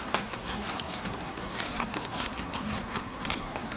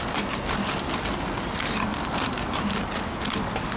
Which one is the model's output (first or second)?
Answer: first